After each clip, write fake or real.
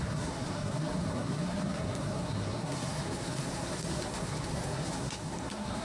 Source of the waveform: fake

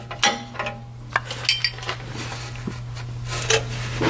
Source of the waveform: real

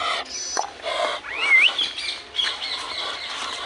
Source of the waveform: real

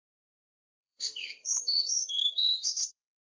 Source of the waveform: fake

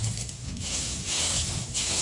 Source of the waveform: fake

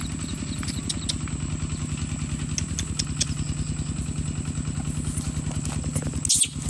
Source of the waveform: real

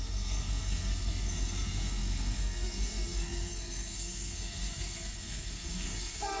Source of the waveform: fake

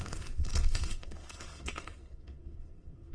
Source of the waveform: fake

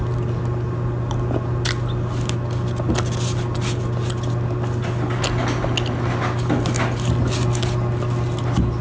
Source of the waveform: real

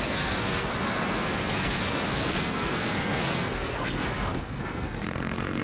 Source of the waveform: fake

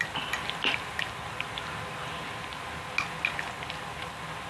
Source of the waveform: real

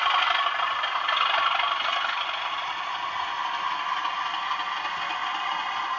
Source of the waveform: real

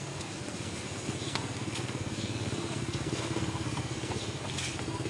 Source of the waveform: fake